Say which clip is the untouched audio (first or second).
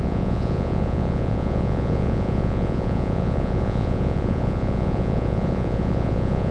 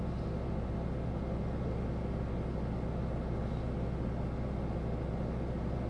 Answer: second